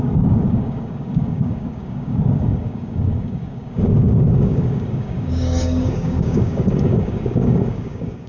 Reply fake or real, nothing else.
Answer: fake